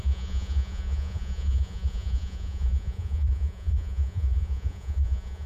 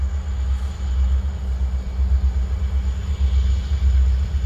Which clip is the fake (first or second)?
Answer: first